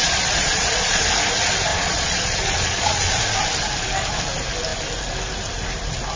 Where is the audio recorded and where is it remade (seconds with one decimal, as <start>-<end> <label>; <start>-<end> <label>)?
0.0-1.0 remade; 1.0-1.7 recorded; 1.7-3.2 remade; 3.2-6.2 recorded